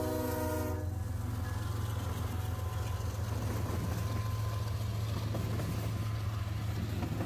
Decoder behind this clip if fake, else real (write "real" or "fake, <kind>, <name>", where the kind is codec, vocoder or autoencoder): real